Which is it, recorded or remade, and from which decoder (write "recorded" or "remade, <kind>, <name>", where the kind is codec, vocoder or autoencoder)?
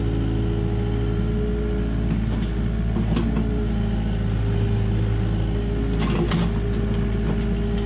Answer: recorded